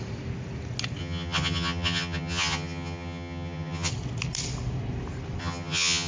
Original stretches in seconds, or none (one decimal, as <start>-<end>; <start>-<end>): 0.0-1.0; 3.9-5.4